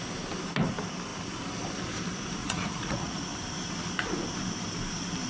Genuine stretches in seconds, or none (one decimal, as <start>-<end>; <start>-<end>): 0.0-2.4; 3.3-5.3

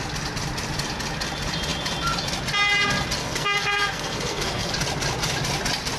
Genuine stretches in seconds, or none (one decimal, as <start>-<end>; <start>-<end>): 0.0-3.2; 4.7-6.0

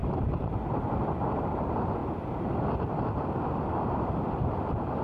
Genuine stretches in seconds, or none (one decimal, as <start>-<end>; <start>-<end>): 0.7-5.0

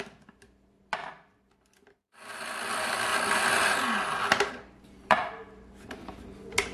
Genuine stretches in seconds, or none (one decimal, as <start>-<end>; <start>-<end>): 3.1-4.5; 5.2-6.7